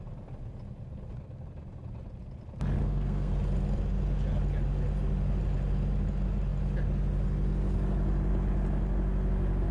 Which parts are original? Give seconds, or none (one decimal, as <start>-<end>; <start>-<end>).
0.0-2.8; 3.3-9.7